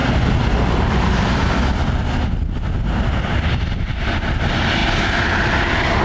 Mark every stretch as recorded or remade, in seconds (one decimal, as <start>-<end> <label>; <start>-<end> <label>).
0.0-6.0 recorded